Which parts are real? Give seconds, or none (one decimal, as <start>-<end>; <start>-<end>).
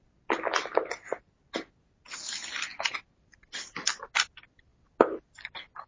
0.0-5.9